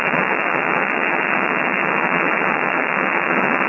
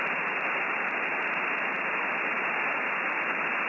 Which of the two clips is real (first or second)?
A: second